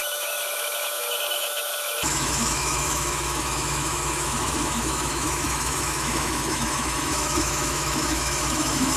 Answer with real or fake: fake